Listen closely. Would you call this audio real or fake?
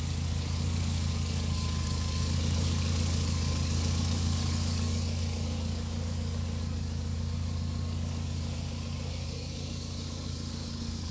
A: fake